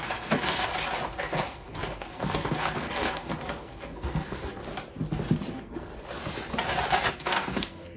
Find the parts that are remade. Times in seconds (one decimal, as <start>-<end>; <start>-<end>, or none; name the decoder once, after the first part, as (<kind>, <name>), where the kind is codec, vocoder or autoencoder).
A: 0.0-0.7 (codec, SNAC); 1.2-4.6; 5.5-5.9; 7.1-8.0